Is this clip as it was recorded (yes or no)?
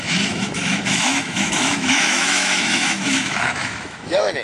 no